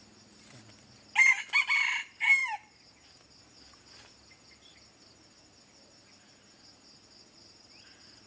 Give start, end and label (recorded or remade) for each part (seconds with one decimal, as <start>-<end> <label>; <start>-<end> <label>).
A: 0.0-8.3 recorded